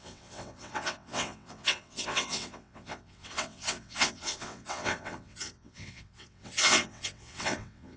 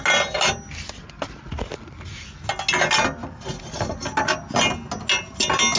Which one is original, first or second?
second